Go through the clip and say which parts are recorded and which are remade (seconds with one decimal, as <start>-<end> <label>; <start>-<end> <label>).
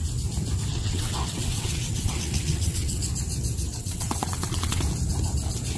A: 0.0-0.7 recorded; 0.7-3.0 remade; 3.0-3.7 recorded; 3.7-4.8 remade; 4.8-5.8 recorded